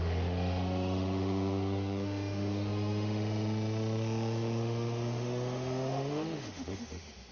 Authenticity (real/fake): fake